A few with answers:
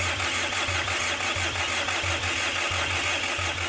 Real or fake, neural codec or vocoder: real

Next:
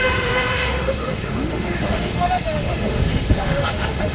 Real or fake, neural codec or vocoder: fake, autoencoder, DAC-VAE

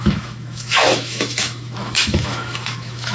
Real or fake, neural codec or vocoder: fake, autoencoder, DAC-VAE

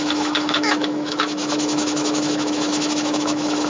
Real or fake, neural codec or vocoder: fake, autoencoder, DAC-VAE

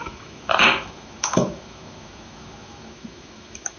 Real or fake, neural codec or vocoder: fake, autoencoder, DAC-VAE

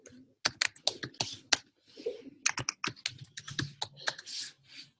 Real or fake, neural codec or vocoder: real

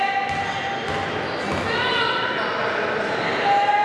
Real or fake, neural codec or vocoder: real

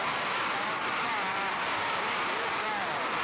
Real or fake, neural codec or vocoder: real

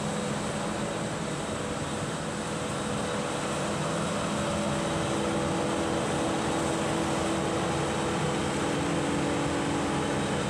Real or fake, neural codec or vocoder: real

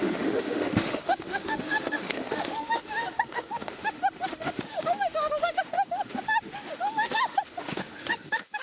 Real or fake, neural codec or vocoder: fake, autoencoder, DAC-VAE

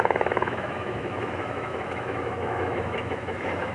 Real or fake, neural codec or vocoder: fake, autoencoder, DAC-VAE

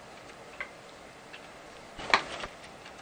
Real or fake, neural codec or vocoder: real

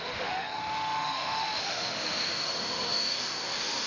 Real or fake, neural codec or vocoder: fake, autoencoder, DAC-VAE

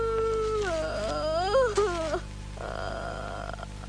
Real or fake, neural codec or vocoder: real